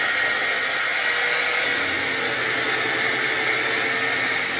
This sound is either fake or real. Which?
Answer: real